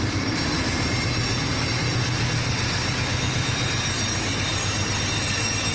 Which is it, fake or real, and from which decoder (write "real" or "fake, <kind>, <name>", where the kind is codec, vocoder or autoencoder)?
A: real